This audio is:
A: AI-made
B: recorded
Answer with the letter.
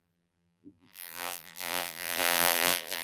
A